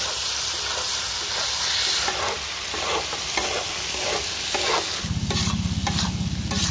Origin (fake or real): real